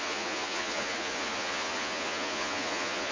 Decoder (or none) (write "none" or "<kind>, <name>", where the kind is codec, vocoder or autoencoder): vocoder, Vocos